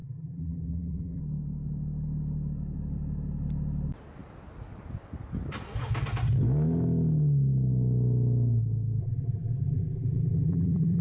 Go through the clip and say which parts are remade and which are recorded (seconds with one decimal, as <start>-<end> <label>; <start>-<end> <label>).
0.0-1.2 remade; 1.2-9.0 recorded; 9.0-11.0 remade